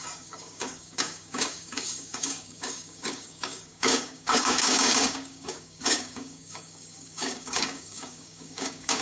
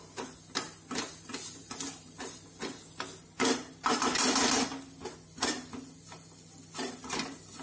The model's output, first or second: first